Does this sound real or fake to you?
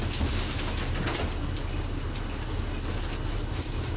real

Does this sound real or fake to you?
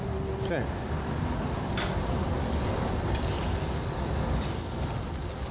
fake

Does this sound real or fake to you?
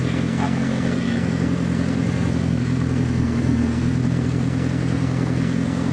fake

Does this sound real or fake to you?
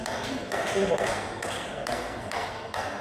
fake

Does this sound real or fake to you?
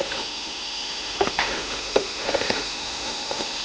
fake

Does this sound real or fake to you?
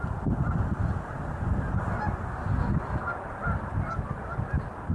real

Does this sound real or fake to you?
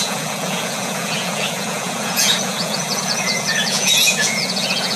fake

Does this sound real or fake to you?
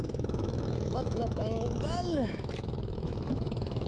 fake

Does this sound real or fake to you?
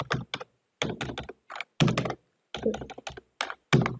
real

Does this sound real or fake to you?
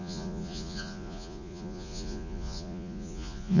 fake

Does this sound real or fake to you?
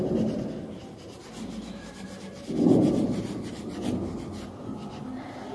real